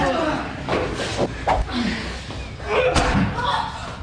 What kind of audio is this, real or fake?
real